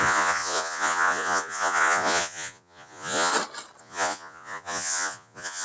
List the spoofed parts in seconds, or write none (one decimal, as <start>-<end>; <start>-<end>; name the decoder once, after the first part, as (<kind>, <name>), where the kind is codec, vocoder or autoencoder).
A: 0.0-3.3 (vocoder, Vocos); 3.8-5.6